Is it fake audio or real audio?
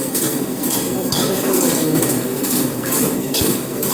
fake